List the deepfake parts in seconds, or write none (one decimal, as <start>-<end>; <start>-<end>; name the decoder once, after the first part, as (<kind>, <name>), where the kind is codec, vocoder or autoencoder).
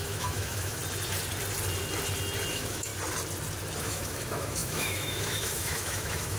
0.0-0.8 (autoencoder, DAC-VAE); 2.5-2.9; 3.8-6.4